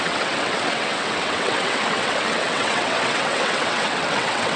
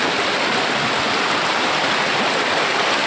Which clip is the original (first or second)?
second